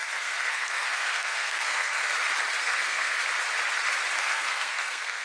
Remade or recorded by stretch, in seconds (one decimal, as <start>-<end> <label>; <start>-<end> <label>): 0.0-2.1 remade; 2.1-2.6 recorded; 2.6-3.2 remade; 3.2-4.2 recorded; 4.2-5.2 remade